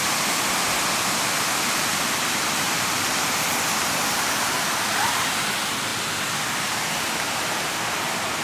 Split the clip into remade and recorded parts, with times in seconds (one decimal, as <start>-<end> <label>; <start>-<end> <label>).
0.0-8.4 recorded